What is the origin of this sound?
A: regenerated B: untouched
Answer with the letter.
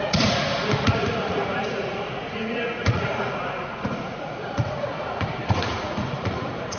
A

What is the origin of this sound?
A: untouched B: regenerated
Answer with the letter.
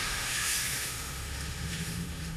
B